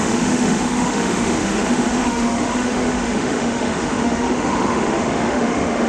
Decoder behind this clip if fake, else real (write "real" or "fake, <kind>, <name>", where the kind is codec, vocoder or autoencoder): fake, autoencoder, DAC-VAE